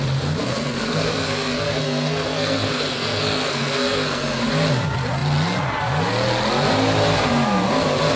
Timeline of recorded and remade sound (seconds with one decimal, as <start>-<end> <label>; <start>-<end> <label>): 0.0-0.4 recorded; 0.4-4.4 remade; 4.4-8.2 recorded